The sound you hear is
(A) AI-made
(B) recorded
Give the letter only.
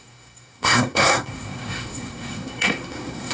A